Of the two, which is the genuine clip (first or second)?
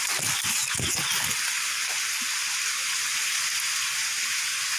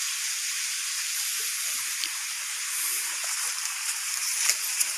first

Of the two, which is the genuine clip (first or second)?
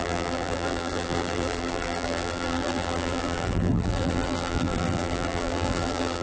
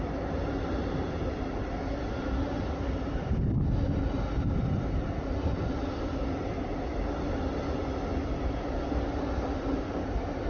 second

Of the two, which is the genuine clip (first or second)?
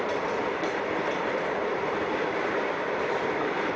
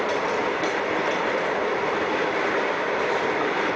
second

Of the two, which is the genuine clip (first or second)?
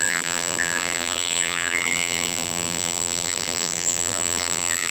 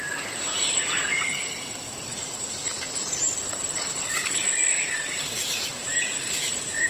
second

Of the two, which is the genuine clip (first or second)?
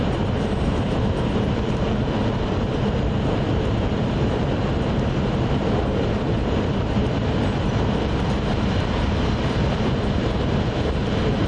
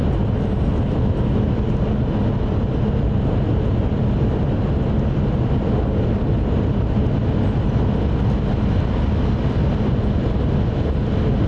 second